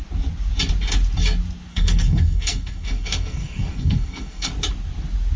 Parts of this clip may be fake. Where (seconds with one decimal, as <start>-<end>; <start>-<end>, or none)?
1.7-4.5